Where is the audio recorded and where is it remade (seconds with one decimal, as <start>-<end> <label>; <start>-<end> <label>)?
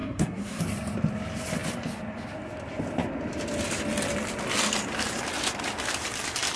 0.0-0.6 remade; 0.6-6.6 recorded